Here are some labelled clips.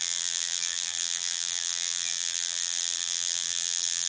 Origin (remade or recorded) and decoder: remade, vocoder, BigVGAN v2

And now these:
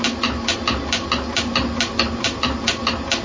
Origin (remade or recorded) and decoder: recorded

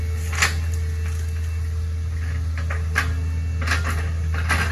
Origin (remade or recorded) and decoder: recorded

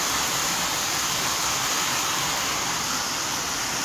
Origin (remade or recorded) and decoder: remade, vocoder, BigVGAN v2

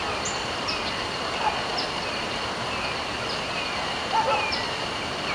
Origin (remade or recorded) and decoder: recorded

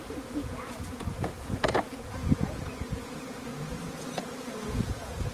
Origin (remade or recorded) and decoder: remade, vocoder, Vocos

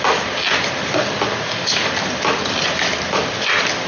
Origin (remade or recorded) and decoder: recorded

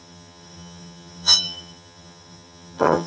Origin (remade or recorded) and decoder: remade, vocoder, HiFi-GAN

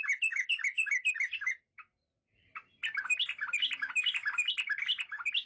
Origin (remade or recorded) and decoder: remade, vocoder, BigVGAN v2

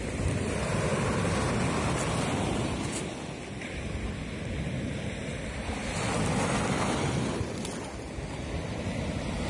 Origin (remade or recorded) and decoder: recorded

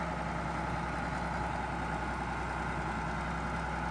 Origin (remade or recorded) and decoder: recorded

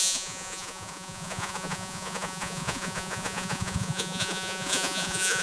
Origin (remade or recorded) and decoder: remade, vocoder, Vocos